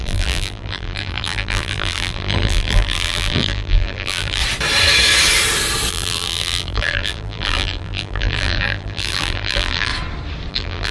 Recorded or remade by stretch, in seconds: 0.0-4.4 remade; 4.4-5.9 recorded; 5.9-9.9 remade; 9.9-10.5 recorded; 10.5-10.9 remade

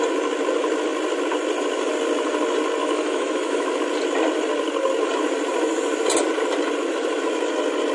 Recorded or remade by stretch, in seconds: 0.0-2.8 recorded; 2.8-3.8 remade; 3.8-7.9 recorded

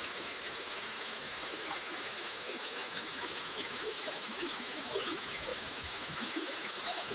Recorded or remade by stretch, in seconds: 0.0-7.1 remade

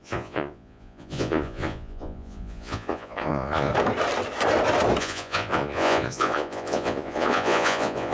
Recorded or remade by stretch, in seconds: 0.0-3.7 remade; 3.7-5.0 recorded; 5.0-8.1 remade